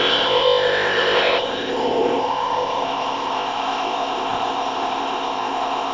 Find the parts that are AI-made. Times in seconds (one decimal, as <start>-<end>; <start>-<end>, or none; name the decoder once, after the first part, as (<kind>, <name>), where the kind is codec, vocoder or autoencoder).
0.0-5.9 (codec, ZipCodec)